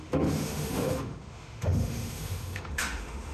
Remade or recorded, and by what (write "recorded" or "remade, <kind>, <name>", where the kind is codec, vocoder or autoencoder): remade, autoencoder, DAC-VAE